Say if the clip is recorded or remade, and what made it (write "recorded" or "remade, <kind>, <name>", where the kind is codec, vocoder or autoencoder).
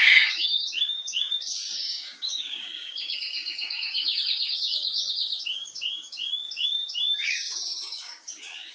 remade, codec, DAC